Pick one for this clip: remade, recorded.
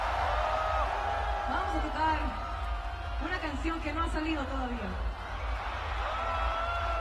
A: recorded